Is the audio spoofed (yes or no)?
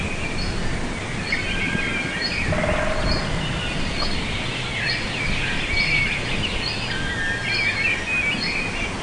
no